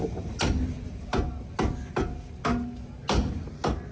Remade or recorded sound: recorded